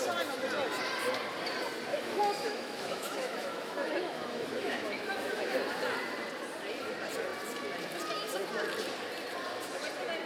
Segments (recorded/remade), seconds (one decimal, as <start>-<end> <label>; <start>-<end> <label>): 0.0-1.9 recorded; 1.9-5.6 remade; 5.6-10.3 recorded